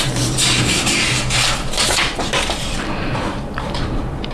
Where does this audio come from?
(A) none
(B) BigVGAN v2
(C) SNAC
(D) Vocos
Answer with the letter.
B